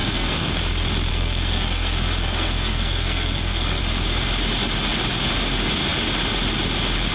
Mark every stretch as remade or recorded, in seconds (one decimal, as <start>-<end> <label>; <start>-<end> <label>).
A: 0.0-0.5 remade; 0.5-1.1 recorded; 1.1-3.8 remade; 3.8-7.1 recorded